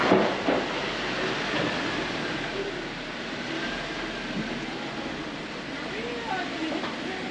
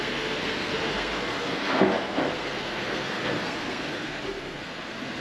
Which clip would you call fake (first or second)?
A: second